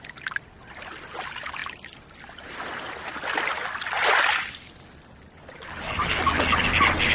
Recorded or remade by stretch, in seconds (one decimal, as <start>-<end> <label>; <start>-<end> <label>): 0.0-7.1 recorded

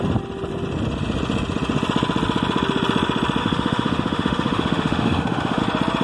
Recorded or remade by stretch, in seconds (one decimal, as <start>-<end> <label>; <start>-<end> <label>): 0.0-3.4 recorded; 3.4-5.6 remade; 5.6-6.0 recorded